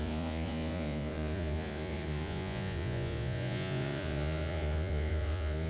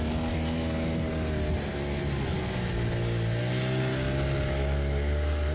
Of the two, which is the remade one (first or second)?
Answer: first